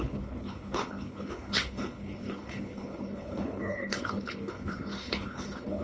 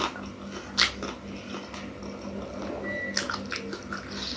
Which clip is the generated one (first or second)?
first